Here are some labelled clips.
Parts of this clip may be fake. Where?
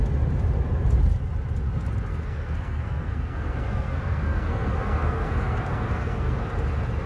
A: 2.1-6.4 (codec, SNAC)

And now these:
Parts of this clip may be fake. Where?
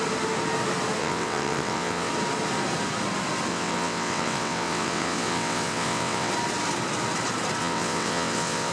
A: 1.0-2.1 (vocoder, WaveNeXt); 3.5-6.3; 7.6-8.7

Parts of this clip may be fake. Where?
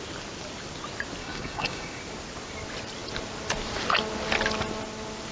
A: 1.2-2.0 (codec, DAC)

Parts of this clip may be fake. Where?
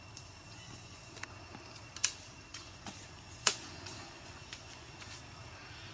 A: 0.5-1.1 (vocoder, Vocos); 2.5-5.1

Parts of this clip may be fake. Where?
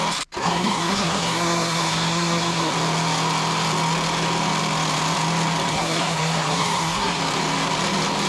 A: 0.4-2.7 (codec, SNAC); 5.7-7.2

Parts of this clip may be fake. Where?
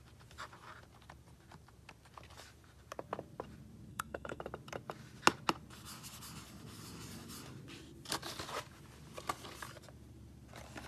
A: 3.9-4.4 (codec, SNAC)